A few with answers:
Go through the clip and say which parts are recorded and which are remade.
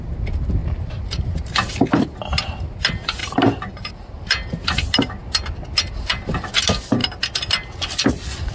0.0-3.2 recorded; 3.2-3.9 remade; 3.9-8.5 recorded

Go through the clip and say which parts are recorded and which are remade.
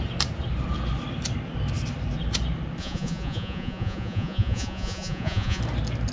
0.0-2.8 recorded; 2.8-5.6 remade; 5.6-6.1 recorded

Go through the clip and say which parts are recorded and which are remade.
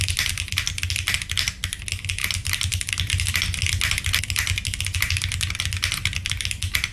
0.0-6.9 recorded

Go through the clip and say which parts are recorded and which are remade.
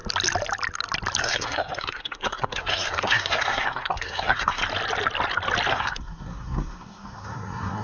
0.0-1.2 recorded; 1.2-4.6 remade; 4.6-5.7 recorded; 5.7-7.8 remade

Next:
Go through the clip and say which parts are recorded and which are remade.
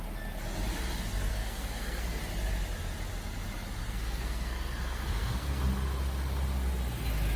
0.0-1.3 recorded; 1.3-2.2 remade; 2.2-3.8 recorded; 3.8-5.6 remade; 5.6-7.4 recorded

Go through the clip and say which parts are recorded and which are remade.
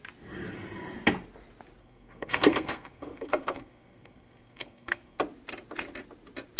0.0-1.8 recorded; 1.8-5.2 remade; 5.2-6.6 recorded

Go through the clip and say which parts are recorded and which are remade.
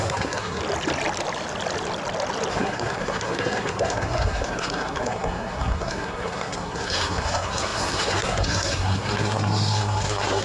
0.0-0.6 remade; 0.6-2.5 recorded; 2.5-10.4 remade